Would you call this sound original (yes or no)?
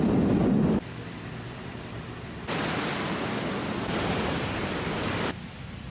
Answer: no